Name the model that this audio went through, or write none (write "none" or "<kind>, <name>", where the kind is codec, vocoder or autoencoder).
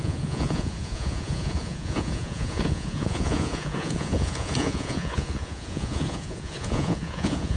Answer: vocoder, Vocos